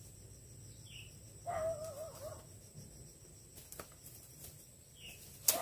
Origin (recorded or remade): recorded